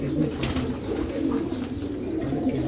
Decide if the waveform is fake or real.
real